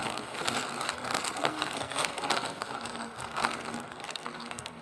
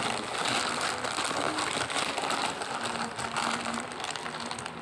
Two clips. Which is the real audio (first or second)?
second